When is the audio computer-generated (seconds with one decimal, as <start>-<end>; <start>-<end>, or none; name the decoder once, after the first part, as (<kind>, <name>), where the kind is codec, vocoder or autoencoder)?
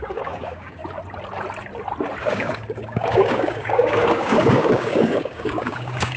0.0-0.8 (codec, DAC); 2.2-6.2